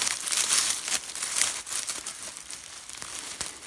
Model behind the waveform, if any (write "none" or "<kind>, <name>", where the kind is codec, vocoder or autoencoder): none